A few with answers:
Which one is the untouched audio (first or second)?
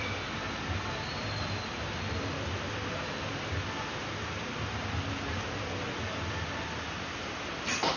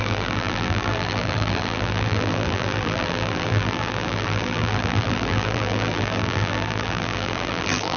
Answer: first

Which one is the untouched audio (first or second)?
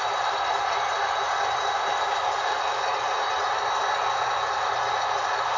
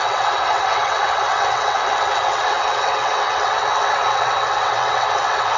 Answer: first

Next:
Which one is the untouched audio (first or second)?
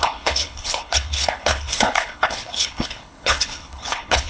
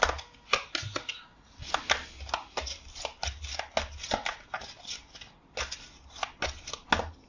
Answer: second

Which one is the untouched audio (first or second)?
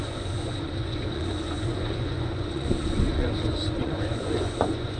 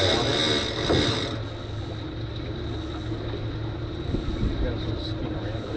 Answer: second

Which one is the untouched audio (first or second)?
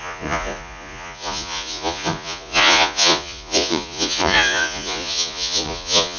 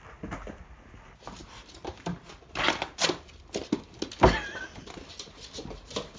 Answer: second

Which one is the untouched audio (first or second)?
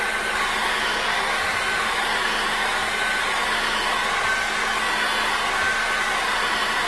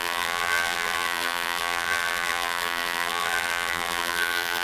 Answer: first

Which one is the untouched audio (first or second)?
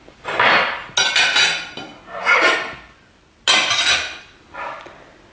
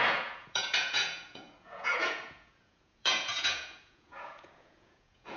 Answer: first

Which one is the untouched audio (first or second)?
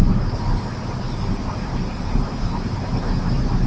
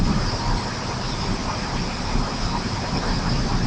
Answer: first